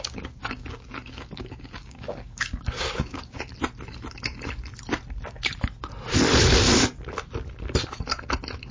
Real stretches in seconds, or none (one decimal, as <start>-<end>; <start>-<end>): 3.5-8.7